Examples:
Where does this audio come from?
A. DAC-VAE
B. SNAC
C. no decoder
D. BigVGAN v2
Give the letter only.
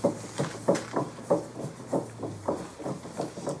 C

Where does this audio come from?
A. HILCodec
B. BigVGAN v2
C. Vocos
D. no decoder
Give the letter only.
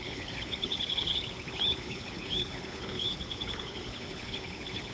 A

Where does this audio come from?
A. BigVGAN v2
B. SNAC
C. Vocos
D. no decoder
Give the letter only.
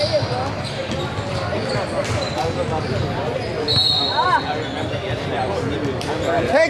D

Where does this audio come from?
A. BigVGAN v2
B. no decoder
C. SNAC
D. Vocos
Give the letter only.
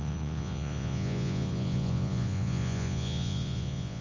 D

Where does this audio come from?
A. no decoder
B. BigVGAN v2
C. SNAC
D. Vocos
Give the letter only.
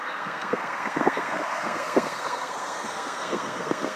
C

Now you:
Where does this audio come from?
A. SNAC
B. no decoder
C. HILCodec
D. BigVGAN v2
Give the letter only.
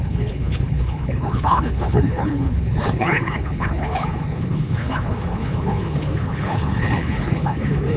C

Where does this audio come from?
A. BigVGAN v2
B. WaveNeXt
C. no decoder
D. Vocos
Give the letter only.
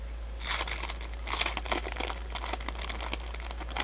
C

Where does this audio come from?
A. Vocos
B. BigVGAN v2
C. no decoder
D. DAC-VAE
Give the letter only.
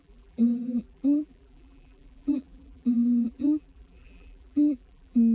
B